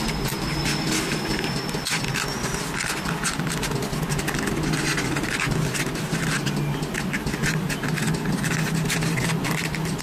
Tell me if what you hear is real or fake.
real